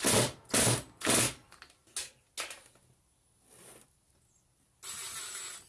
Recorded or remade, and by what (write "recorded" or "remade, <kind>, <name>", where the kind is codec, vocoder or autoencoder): recorded